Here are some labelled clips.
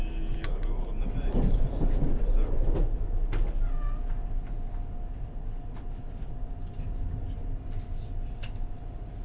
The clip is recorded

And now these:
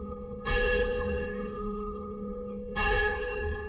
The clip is remade